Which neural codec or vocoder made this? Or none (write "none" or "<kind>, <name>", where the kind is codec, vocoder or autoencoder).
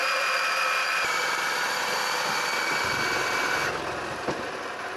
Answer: none